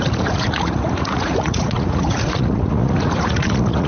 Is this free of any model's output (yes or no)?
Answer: no